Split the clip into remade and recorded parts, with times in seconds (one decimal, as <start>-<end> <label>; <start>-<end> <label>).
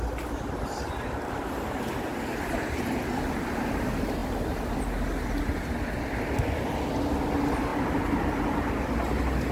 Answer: 0.0-9.5 recorded